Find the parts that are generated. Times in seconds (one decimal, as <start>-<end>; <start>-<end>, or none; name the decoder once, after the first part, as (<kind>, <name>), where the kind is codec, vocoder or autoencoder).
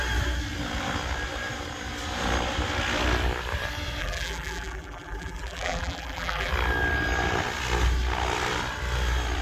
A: 4.0-6.5 (vocoder, BigVGAN v2)